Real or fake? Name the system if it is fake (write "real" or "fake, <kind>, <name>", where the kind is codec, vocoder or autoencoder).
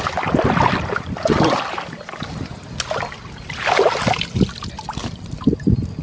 real